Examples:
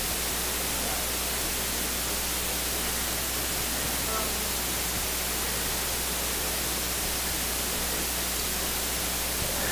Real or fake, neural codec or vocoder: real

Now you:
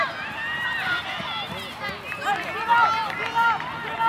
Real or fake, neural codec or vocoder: real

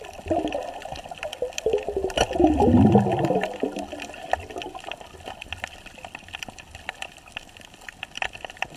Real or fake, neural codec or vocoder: real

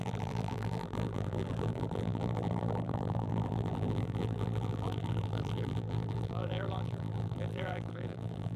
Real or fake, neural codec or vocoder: fake, vocoder, BigVGAN v2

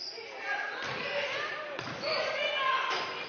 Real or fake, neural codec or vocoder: real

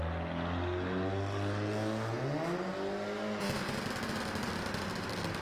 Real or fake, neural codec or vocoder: real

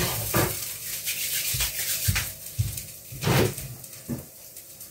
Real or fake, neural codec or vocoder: fake, vocoder, BigVGAN v2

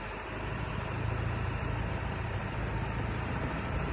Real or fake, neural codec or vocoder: fake, vocoder, BigVGAN v2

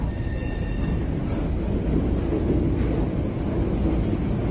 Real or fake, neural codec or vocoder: real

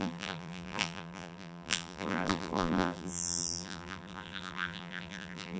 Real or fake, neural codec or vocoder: fake, vocoder, BigVGAN v2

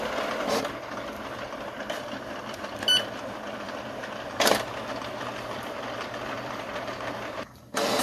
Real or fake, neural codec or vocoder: fake, vocoder, BigVGAN v2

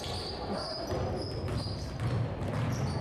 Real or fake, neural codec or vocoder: real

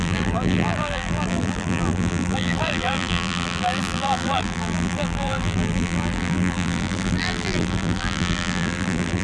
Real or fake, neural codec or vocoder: fake, vocoder, BigVGAN v2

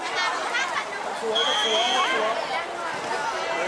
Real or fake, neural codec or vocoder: real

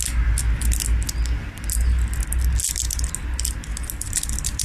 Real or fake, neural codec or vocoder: real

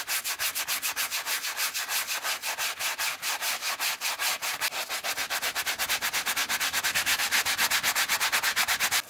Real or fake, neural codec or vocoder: real